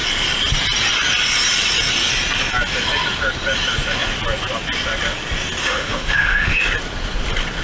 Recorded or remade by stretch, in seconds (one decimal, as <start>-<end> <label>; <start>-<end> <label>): 0.0-5.6 recorded; 5.6-6.6 remade; 6.6-7.6 recorded